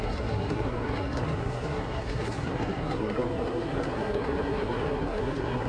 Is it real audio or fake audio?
fake